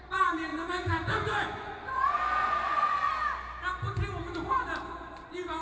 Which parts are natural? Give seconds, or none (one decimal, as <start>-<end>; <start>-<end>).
0.0-0.5; 3.1-5.6